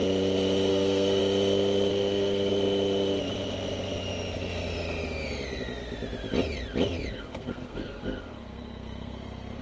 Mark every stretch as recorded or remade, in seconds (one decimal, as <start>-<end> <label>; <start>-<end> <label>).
0.0-0.7 recorded; 0.7-1.2 remade; 1.2-1.9 recorded; 1.9-2.5 remade; 2.5-7.1 recorded; 7.1-9.6 remade